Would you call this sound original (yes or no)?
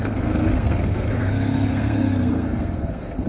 no